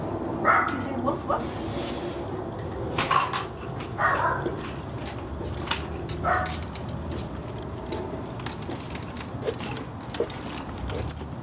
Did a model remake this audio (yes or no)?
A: no